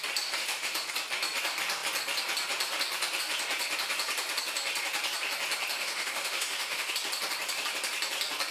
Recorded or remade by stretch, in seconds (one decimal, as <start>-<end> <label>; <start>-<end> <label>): 0.0-0.4 recorded; 0.4-0.9 remade; 0.9-5.7 recorded; 5.7-6.9 remade; 6.9-8.5 recorded